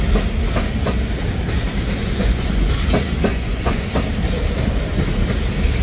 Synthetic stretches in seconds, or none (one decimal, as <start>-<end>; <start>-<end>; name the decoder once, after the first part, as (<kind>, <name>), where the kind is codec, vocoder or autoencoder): 2.0-2.7 (vocoder, Vocos); 3.3-3.9